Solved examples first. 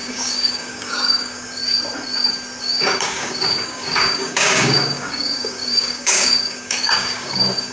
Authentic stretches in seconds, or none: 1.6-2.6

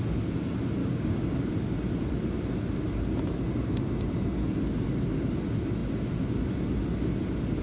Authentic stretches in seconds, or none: 0.0-0.8; 1.5-7.6